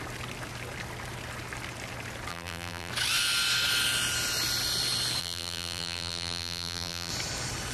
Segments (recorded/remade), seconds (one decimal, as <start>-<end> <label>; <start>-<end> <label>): 0.0-2.3 recorded; 2.3-2.9 remade; 2.9-5.2 recorded; 5.2-7.1 remade; 7.1-7.7 recorded